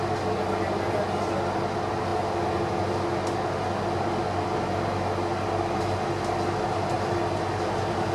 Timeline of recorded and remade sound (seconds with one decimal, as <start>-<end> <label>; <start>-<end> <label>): 0.0-8.1 recorded